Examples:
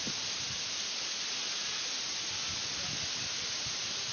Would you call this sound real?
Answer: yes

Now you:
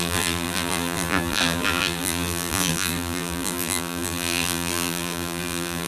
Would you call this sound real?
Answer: no